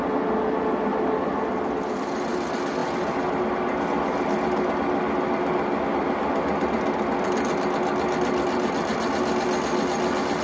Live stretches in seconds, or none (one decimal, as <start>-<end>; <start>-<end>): 0.0-10.4